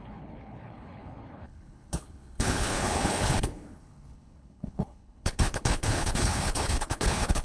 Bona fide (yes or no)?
no